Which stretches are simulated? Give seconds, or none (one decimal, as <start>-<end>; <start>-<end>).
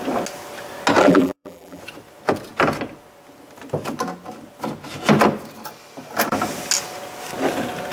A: 1.0-1.8